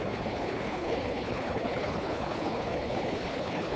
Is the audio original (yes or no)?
no